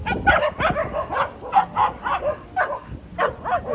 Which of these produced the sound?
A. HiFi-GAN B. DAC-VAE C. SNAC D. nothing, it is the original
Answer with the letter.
D